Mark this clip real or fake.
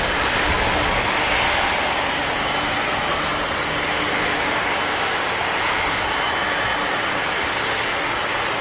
real